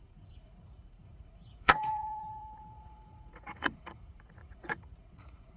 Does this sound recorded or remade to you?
remade